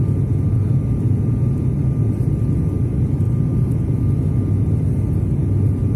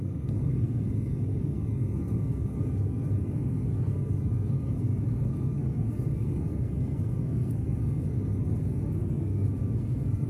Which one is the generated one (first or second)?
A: second